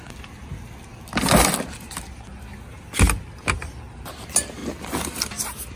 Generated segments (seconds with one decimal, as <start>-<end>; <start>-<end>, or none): 0.9-1.5; 4.6-5.3

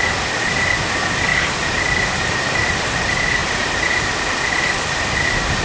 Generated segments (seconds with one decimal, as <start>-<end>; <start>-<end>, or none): 1.3-2.9

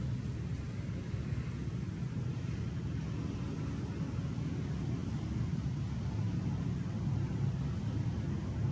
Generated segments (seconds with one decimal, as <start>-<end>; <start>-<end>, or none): 5.0-5.6

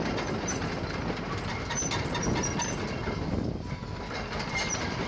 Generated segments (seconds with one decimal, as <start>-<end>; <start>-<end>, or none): 1.2-5.1

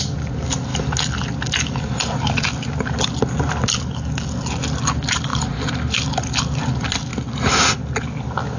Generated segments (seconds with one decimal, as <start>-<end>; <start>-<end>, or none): 5.3-6.1

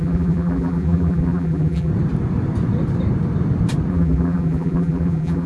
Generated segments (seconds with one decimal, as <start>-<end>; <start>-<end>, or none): 0.0-1.9; 3.9-5.5

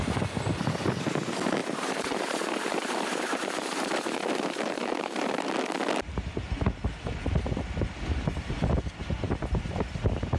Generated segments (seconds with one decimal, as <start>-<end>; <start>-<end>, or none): 1.6-5.5

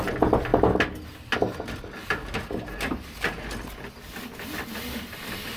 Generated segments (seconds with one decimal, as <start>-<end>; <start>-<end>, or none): none